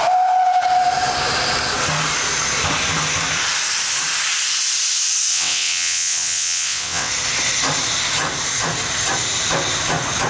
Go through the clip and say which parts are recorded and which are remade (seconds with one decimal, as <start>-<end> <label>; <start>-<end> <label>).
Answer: 0.0-5.3 recorded; 5.3-7.1 remade; 7.1-10.3 recorded